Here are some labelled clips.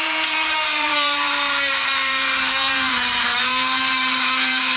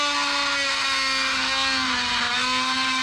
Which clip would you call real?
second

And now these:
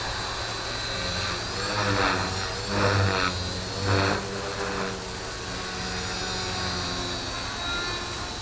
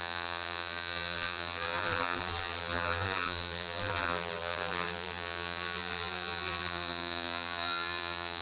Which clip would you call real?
first